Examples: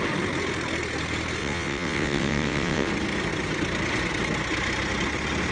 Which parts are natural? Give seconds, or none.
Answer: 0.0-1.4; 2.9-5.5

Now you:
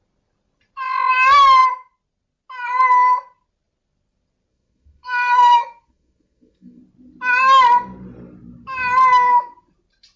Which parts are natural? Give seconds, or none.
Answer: 0.0-4.5; 6.8-10.2